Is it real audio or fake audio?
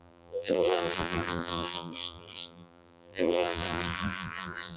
fake